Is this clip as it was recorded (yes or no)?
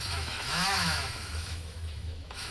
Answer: no